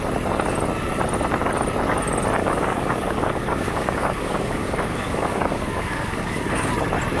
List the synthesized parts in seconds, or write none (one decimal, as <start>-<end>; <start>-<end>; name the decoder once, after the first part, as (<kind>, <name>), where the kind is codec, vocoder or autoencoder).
2.4-6.7 (codec, DAC)

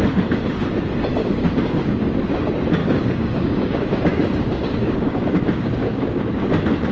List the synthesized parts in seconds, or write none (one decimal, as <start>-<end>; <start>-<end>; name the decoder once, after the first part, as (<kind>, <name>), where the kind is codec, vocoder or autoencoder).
1.2-2.0 (codec, DAC); 2.8-6.5

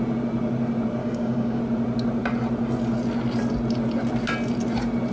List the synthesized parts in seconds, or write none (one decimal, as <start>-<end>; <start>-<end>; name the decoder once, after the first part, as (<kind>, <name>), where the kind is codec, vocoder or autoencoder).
1.0-1.6 (codec, DAC)

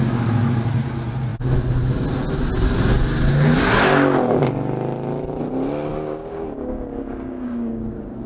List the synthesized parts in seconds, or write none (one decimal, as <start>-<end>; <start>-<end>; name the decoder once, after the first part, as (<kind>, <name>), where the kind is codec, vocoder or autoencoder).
5.9-8.3 (codec, DAC)

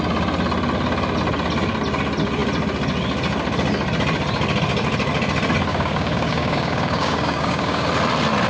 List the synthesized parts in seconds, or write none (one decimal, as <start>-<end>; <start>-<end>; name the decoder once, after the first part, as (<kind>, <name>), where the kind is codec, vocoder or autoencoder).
5.7-7.9 (codec, DAC)